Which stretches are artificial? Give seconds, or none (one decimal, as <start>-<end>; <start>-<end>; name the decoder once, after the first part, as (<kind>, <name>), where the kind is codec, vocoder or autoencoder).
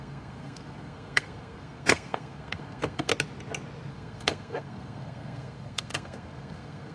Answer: 0.0-3.1 (codec, SNAC); 3.9-6.9